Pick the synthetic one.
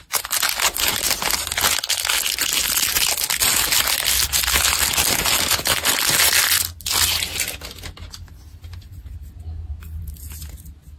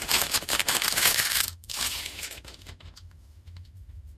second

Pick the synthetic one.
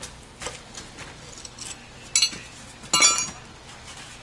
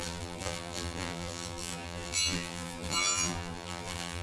second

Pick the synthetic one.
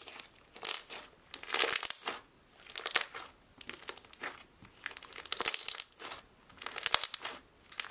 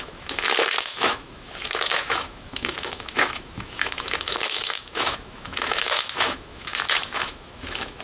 second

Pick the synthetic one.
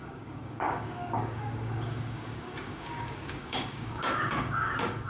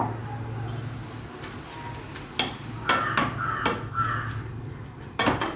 first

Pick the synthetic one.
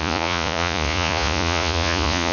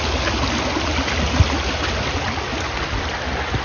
first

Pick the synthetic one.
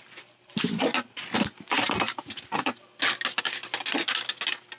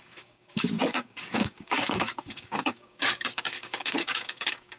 second